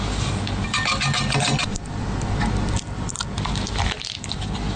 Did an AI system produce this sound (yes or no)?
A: no